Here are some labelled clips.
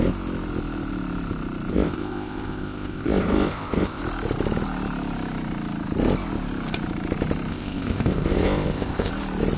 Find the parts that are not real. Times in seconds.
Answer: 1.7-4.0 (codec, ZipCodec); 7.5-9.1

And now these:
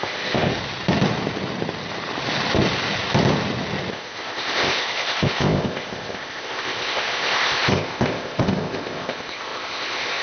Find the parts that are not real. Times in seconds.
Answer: 0.0-0.5 (codec, ZipCodec); 3.9-10.2